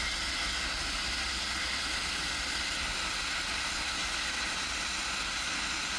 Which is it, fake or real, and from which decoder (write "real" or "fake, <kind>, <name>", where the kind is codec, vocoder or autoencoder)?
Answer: real